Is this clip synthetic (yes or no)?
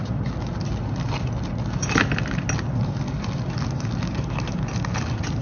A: no